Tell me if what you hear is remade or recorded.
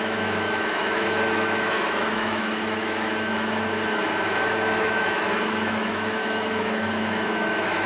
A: remade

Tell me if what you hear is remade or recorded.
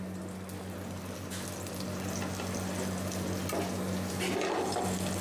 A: recorded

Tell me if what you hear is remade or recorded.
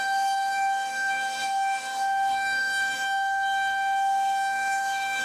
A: remade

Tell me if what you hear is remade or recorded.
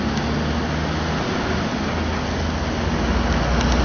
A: recorded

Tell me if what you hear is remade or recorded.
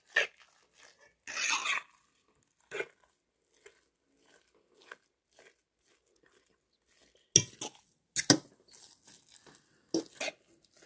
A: recorded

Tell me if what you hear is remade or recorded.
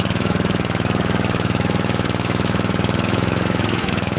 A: remade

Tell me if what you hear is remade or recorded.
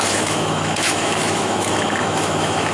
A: remade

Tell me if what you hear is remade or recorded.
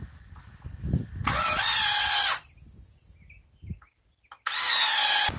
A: recorded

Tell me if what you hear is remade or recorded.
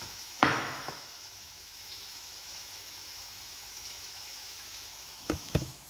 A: remade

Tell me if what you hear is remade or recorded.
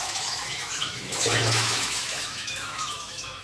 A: remade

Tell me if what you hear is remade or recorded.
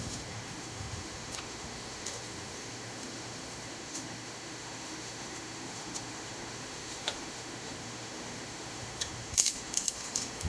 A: remade